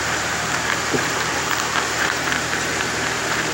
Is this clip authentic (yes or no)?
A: no